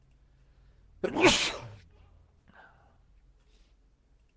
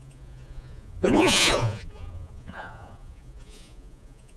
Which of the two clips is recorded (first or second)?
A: first